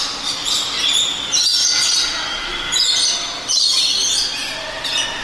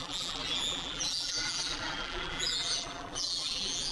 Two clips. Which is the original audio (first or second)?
first